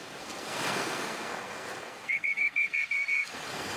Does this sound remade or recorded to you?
remade